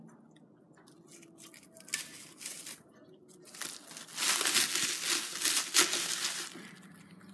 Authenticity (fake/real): real